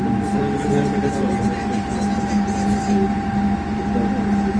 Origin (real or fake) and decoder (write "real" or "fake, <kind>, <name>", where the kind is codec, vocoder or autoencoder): real